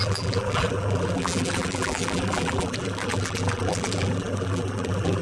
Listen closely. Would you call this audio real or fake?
fake